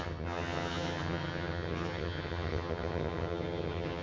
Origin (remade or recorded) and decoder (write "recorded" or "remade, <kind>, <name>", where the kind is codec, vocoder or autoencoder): remade, vocoder, HiFi-GAN